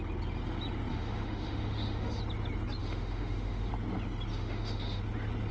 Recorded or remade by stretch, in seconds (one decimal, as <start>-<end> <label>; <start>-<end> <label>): 0.0-0.9 recorded; 0.9-2.2 remade; 2.2-2.8 recorded; 2.8-3.7 remade; 3.7-4.3 recorded; 4.3-5.0 remade; 5.0-5.5 recorded